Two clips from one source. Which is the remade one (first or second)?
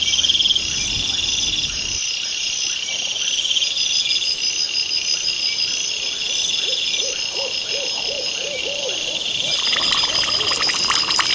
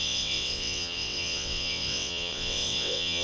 second